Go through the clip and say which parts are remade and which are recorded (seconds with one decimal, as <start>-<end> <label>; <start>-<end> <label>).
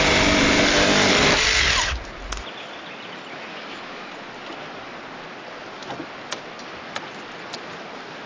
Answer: 0.0-3.5 recorded; 3.5-4.1 remade; 4.1-8.3 recorded